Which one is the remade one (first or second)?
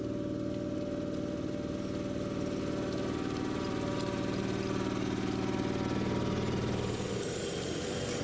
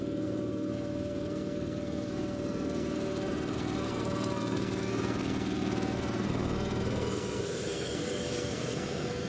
second